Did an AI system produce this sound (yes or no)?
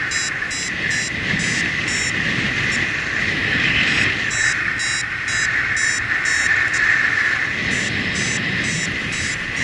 no